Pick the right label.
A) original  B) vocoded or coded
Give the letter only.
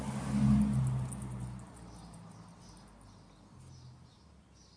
A